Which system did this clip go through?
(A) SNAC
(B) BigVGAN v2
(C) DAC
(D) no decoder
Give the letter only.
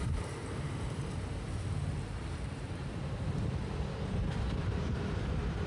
B